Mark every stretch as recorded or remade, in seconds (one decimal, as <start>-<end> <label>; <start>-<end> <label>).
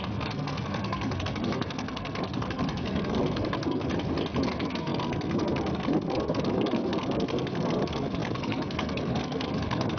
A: 0.0-3.9 remade; 3.9-4.4 recorded; 4.4-10.0 remade